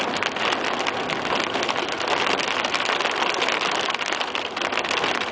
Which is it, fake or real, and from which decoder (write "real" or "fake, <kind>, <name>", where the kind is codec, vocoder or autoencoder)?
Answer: real